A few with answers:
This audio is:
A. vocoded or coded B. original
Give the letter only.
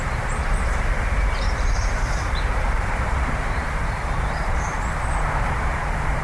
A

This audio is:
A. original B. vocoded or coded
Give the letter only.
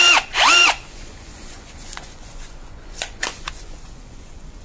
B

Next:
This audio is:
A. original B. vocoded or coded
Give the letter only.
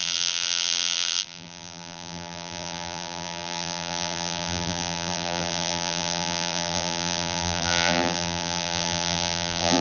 B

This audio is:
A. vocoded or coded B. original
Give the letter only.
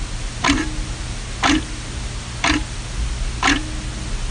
B